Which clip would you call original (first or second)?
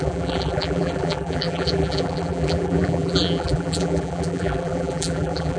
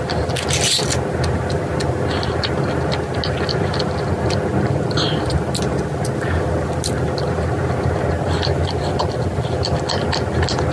second